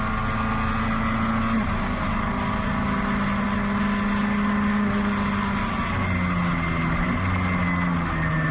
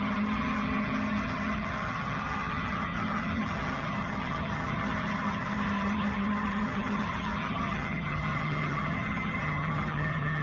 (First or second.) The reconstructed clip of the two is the second